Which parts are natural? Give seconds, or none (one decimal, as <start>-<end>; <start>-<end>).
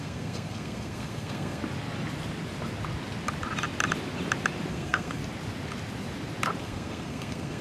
1.6-4.7; 5.2-6.6